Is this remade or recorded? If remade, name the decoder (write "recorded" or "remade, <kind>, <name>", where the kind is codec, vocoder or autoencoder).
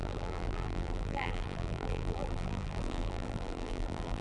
remade, vocoder, BigVGAN v2